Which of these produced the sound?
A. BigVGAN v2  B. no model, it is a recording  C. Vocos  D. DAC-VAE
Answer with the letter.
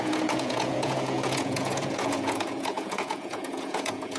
C